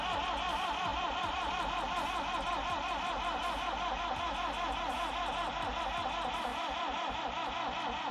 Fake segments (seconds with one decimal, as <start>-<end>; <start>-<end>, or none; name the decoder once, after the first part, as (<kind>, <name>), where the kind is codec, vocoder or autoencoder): 0.9-5.8 (vocoder, BigVGAN v2); 6.5-7.2